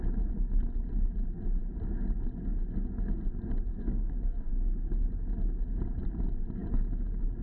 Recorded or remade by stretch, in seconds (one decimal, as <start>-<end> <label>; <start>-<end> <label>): 0.0-3.7 recorded; 3.7-4.5 remade; 4.5-7.4 recorded